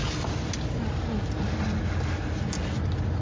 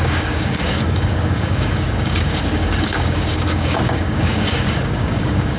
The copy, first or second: second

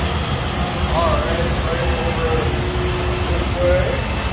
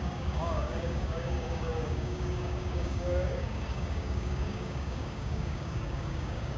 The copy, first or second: second